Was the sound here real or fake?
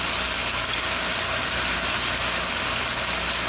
real